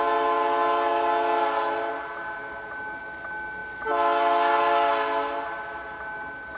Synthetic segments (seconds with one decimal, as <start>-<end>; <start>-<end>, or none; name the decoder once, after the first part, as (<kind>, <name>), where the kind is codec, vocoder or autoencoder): none